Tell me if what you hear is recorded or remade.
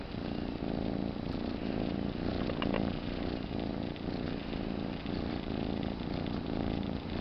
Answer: recorded